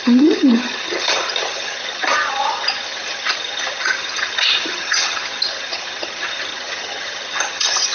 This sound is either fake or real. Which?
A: fake